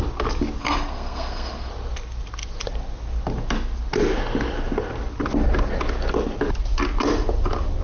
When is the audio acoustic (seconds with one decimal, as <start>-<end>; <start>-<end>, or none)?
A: 0.0-0.6; 1.7-7.8